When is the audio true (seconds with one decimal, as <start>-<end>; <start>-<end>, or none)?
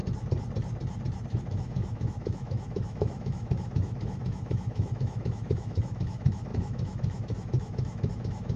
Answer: 0.0-1.4